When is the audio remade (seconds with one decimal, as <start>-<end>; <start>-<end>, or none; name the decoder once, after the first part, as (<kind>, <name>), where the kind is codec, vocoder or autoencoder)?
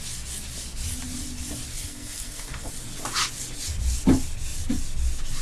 1.7-2.7 (codec, SNAC)